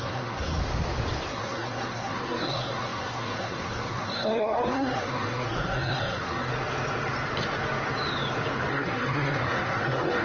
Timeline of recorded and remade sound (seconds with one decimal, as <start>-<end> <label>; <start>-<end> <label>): 0.0-0.6 remade; 0.6-1.3 recorded; 1.3-6.5 remade; 6.5-8.7 recorded; 8.7-10.2 remade